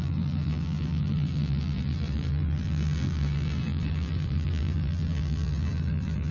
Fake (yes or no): yes